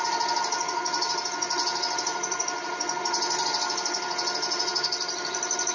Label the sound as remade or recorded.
recorded